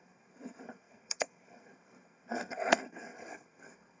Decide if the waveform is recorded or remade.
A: remade